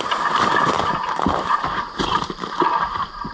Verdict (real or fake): fake